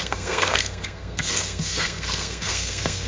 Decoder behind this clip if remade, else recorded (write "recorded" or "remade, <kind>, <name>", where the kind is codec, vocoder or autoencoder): remade, codec, SNAC